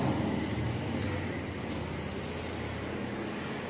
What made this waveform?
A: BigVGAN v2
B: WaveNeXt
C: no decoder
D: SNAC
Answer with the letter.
C